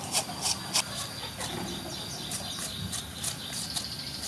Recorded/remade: recorded